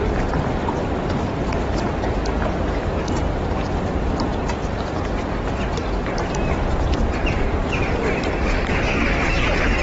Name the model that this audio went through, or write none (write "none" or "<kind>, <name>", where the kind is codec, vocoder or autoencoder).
vocoder, BigVGAN v2